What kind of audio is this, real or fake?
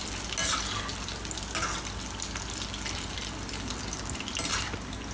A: real